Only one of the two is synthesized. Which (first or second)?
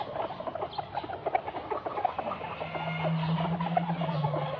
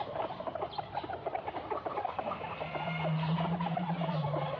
second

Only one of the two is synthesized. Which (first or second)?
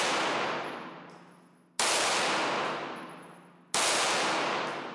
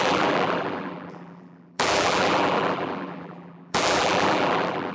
second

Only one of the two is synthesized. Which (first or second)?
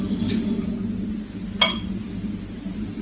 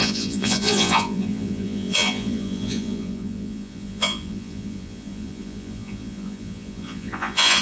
second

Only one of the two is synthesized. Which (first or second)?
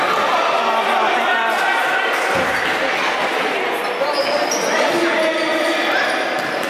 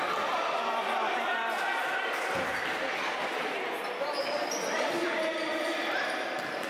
second